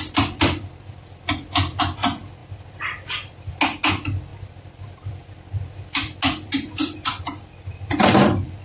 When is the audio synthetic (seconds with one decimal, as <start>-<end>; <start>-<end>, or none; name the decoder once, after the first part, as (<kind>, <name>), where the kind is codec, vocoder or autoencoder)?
none